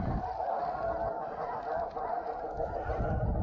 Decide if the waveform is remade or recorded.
recorded